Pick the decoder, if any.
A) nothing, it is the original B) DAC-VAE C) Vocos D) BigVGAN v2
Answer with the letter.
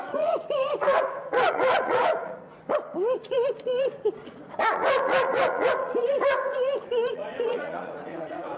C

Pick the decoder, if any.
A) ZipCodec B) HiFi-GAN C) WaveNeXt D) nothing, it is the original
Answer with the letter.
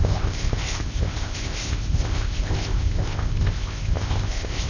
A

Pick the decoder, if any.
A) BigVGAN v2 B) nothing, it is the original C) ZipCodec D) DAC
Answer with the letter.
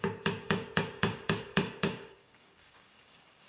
D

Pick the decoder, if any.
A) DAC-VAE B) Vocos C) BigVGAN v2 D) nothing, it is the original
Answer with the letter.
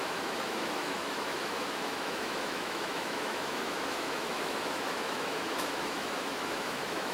A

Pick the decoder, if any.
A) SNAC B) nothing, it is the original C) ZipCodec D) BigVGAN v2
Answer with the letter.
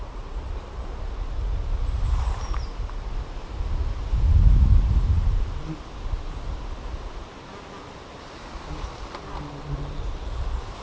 B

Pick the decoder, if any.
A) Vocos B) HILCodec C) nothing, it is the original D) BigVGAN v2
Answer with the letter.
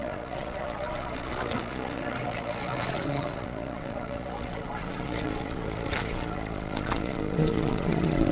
A